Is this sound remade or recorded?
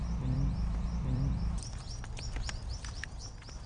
remade